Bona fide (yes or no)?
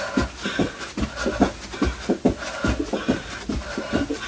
yes